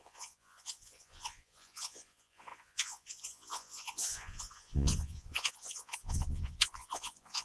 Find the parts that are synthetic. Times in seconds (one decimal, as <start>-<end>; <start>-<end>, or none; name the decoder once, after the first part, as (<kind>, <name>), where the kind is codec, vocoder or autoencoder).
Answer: 0.0-7.4 (vocoder, Vocos)